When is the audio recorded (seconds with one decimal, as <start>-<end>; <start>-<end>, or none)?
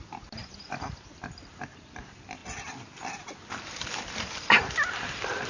0.0-5.5